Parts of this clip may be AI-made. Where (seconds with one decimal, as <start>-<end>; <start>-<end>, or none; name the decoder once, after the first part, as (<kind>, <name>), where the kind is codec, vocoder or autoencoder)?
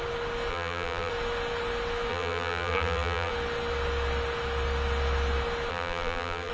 0.5-1.1 (vocoder, BigVGAN v2); 2.1-3.3; 5.7-6.5